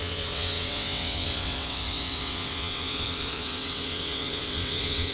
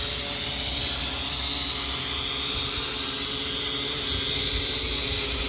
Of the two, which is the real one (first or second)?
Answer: second